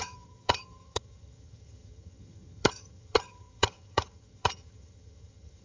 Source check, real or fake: fake